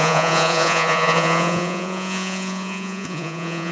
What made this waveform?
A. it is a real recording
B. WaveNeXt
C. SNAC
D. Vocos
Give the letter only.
D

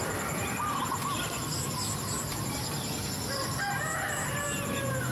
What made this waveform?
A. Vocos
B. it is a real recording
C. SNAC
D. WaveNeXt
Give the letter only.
B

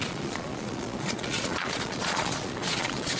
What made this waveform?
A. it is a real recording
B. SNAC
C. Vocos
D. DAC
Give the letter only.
C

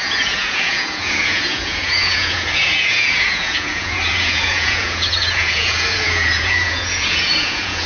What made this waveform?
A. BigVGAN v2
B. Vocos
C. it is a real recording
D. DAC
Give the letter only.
B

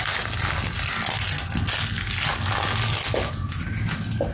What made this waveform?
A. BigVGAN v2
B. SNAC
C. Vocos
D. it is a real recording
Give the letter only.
D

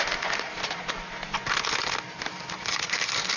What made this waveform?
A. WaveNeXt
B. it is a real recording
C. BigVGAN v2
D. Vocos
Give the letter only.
B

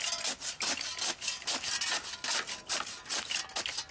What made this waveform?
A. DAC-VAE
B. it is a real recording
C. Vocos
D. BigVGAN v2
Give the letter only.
B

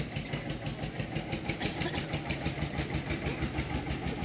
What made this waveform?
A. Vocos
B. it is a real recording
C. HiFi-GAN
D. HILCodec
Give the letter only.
B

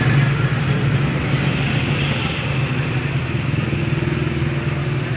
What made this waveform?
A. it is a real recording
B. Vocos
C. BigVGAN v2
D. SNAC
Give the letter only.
A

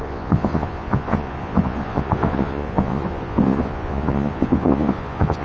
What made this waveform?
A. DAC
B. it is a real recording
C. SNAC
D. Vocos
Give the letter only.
D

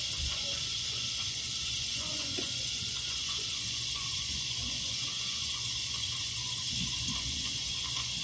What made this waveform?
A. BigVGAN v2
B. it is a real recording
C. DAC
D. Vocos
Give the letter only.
D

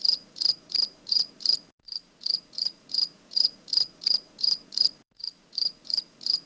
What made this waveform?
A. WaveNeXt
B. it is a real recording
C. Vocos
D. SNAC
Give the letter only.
C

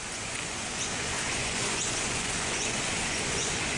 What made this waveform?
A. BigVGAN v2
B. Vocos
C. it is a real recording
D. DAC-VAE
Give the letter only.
B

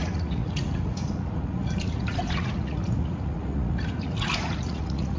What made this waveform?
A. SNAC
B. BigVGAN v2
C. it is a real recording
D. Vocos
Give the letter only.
D